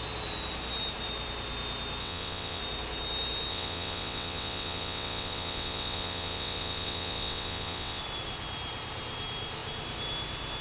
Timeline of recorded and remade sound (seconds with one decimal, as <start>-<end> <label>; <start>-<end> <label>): 0.0-2.0 recorded; 2.0-2.6 remade; 2.6-3.5 recorded; 3.5-8.0 remade; 8.0-10.6 recorded